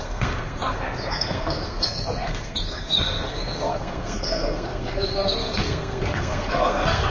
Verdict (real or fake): fake